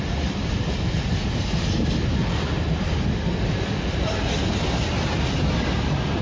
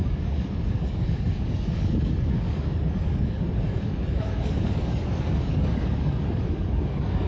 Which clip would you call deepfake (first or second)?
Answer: second